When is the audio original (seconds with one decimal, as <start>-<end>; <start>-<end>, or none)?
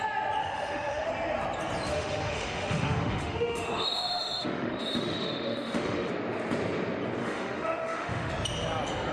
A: 0.0-0.4; 1.1-1.9; 6.1-7.2; 8.3-9.1